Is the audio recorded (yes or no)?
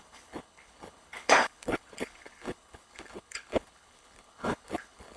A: no